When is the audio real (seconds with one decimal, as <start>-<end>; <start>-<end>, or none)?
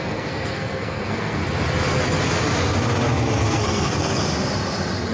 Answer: 1.4-3.5; 4.2-5.1